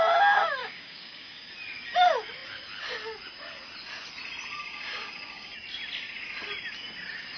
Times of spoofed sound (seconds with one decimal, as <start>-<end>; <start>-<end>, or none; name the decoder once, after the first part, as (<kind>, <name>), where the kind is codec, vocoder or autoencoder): 0.6-1.5 (codec, DAC); 4.6-5.5